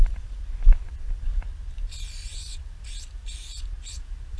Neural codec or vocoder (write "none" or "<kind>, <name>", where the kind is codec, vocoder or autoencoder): none